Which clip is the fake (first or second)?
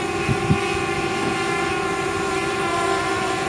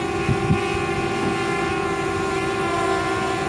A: first